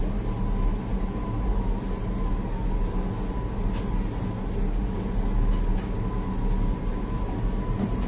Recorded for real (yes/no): yes